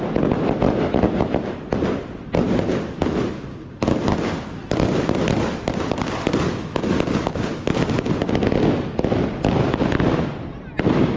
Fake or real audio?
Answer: real